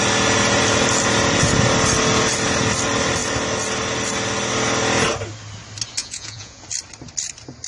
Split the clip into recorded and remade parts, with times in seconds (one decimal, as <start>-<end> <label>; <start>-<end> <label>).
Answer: 0.0-6.0 recorded; 6.0-6.6 remade; 6.6-7.7 recorded